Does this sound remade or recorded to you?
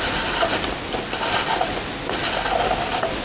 recorded